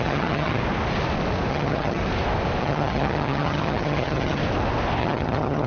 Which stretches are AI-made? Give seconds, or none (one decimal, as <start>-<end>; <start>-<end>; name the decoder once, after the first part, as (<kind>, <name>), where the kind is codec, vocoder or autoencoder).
0.0-0.6 (vocoder, HiFi-GAN); 1.5-2.0; 2.6-4.4; 5.0-5.7